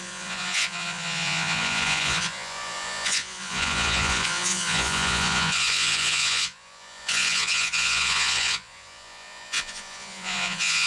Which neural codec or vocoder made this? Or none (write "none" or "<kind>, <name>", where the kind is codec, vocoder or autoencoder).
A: vocoder, Vocos